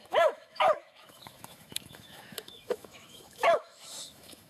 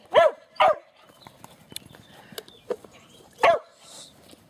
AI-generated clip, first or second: first